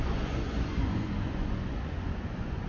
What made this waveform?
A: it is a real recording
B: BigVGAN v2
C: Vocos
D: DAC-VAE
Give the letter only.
C